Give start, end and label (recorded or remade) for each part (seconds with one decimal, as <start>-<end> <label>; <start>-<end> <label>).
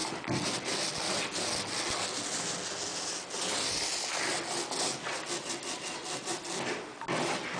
0.0-7.6 recorded